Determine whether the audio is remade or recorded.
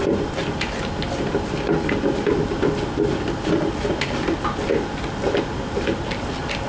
recorded